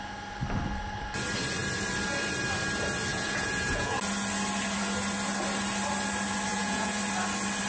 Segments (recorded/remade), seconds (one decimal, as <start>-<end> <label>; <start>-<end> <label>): 0.0-3.1 recorded; 3.1-4.0 remade; 4.0-6.5 recorded; 6.5-7.0 remade; 7.0-7.7 recorded